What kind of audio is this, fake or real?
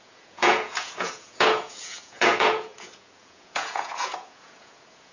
fake